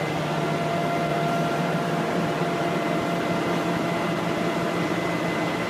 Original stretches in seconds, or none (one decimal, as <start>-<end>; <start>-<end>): 0.0-1.1; 2.0-5.7